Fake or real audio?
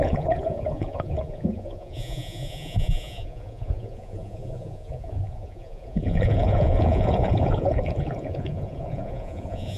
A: fake